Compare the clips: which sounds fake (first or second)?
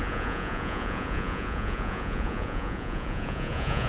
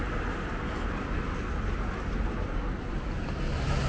first